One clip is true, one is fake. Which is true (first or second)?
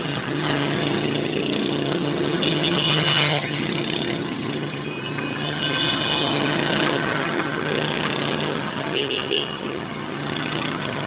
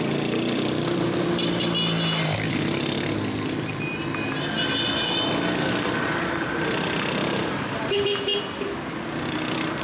second